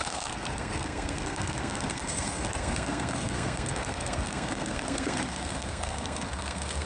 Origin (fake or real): fake